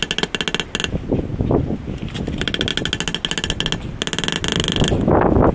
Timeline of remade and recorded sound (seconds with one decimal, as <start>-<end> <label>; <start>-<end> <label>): 0.0-5.5 recorded